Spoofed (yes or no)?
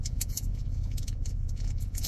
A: yes